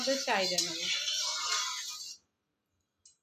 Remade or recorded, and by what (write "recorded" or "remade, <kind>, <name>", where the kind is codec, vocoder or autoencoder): recorded